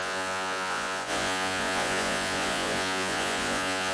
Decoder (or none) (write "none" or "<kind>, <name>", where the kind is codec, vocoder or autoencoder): vocoder, Vocos